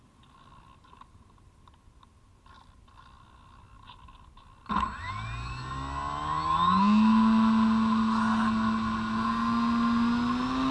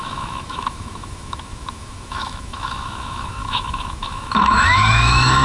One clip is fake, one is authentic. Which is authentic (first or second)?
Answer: first